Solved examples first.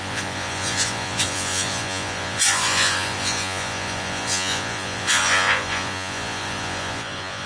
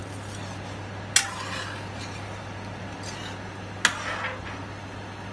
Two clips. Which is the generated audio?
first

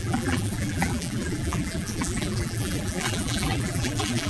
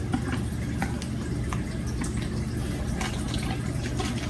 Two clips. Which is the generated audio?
first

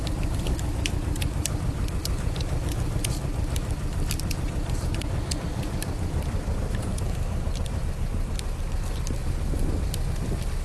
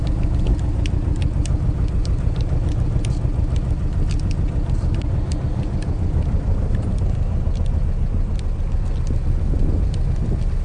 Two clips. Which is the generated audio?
first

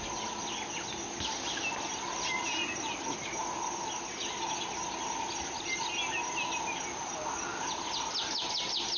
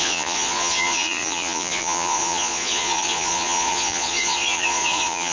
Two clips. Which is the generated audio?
second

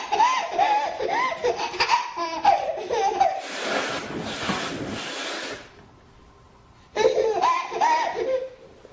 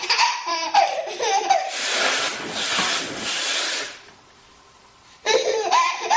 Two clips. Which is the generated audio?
second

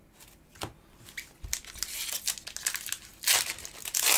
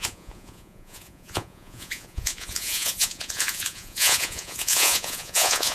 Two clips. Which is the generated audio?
second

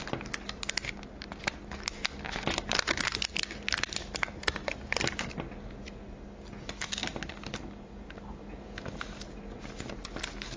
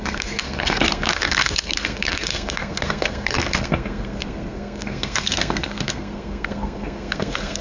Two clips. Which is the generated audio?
second